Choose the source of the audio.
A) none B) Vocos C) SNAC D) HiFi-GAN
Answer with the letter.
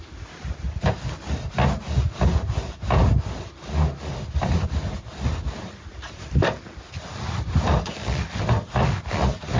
A